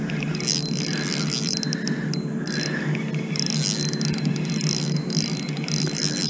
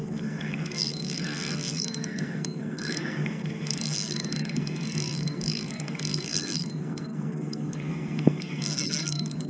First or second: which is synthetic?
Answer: second